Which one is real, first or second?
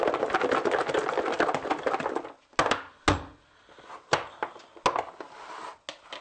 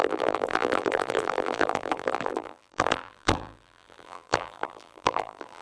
first